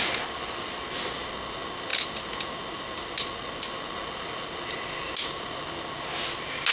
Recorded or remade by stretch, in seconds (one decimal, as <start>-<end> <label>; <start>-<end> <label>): 0.0-6.7 recorded